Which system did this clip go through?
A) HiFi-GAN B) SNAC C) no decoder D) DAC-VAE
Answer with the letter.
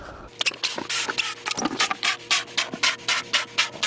C